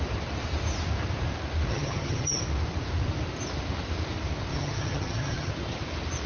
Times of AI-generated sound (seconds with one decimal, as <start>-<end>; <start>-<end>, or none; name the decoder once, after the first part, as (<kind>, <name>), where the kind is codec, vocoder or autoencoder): 1.7-2.4 (vocoder, HiFi-GAN); 4.5-5.5

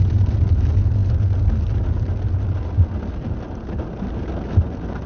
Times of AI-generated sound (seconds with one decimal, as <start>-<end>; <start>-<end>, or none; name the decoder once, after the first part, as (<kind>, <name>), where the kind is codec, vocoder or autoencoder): none

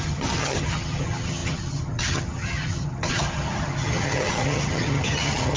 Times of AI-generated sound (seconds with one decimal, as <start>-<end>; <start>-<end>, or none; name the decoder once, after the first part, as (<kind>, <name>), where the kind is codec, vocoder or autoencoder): 0.0-5.6 (vocoder, HiFi-GAN)

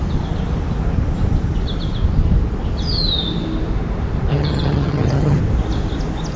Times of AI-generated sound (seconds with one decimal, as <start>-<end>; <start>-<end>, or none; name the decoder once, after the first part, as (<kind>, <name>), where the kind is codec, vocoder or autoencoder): 4.3-5.4 (vocoder, HiFi-GAN)

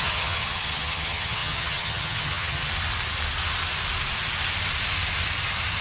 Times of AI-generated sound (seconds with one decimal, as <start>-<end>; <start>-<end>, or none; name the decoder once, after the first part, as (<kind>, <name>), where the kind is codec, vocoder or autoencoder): 0.0-2.6 (vocoder, HiFi-GAN)

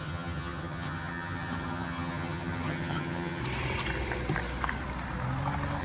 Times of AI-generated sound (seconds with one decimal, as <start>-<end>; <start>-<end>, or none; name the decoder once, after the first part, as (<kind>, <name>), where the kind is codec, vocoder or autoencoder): 0.0-3.4 (vocoder, HiFi-GAN)